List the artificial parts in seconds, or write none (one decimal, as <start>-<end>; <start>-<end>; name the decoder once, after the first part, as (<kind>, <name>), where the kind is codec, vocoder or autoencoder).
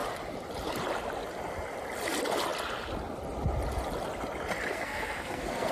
4.7-5.7 (codec, SNAC)